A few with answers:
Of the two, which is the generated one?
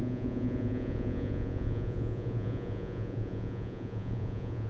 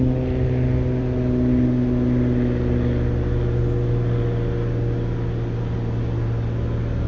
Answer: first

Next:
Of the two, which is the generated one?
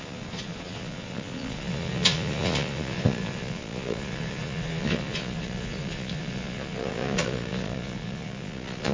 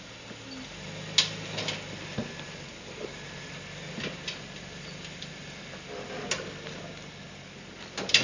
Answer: first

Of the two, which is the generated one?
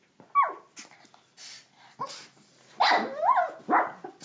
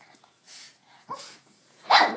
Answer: second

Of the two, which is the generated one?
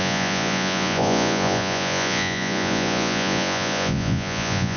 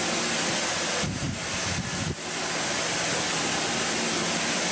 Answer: first